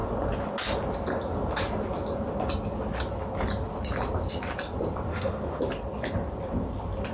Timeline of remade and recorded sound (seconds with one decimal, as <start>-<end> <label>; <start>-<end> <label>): 0.0-5.1 recorded; 5.1-5.6 remade; 5.6-7.1 recorded